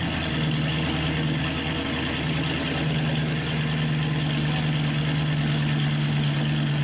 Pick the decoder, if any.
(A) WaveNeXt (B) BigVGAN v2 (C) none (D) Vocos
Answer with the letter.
C